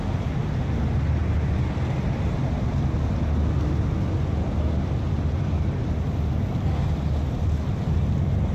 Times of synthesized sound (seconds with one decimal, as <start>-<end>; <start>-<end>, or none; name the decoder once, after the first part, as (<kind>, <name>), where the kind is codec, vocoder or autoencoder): none